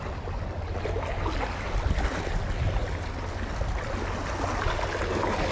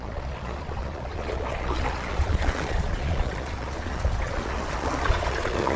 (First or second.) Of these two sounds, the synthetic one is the second